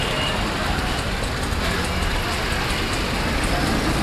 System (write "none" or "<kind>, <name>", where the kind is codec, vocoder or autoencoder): none